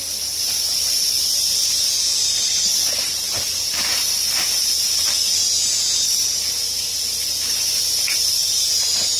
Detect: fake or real real